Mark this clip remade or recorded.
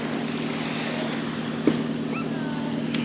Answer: recorded